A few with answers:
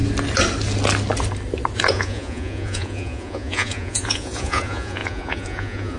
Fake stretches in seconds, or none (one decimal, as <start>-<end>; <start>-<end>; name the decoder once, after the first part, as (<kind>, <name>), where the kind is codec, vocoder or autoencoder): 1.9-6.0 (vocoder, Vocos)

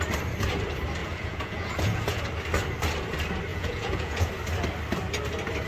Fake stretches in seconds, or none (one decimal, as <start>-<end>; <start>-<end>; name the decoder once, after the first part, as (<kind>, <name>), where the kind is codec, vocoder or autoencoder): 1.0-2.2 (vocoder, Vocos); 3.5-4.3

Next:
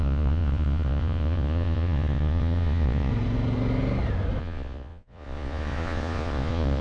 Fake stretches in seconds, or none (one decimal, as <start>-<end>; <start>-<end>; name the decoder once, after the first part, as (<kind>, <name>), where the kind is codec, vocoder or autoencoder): 0.0-3.1 (vocoder, Vocos); 4.4-6.8

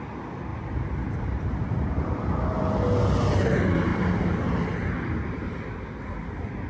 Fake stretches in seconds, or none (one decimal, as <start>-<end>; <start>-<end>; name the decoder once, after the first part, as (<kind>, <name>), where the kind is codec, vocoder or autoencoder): 0.5-2.1 (vocoder, BigVGAN v2); 3.9-4.5